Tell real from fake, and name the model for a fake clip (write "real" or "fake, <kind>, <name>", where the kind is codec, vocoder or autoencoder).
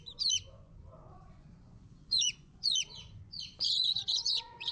fake, vocoder, Vocos